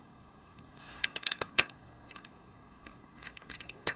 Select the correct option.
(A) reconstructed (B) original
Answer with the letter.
A